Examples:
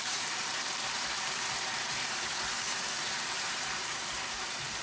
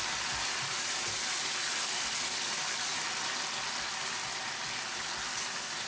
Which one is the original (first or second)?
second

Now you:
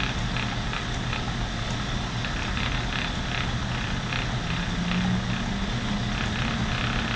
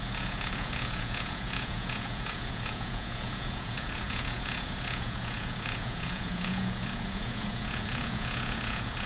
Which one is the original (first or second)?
first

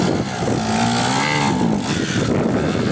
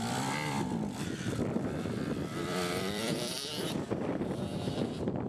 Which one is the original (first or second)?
first